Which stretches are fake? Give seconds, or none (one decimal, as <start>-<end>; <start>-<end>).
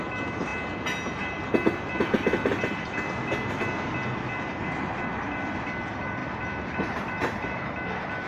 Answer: none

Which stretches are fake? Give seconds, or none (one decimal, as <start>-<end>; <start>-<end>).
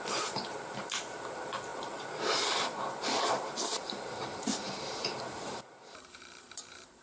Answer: 0.0-7.0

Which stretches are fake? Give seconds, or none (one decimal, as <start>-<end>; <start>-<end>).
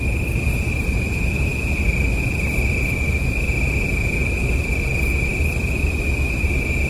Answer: none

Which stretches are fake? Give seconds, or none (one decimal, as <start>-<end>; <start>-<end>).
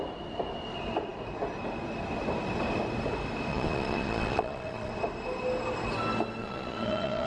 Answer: 3.5-4.9; 6.4-7.3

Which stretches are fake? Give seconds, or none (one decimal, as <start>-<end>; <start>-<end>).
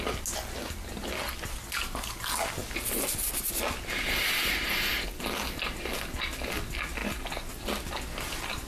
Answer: none